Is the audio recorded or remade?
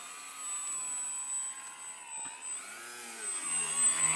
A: recorded